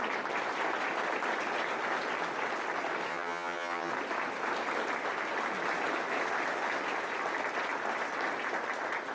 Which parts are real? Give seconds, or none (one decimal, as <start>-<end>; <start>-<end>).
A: 0.0-3.1; 3.9-9.1